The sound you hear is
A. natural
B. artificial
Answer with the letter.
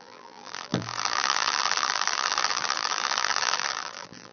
B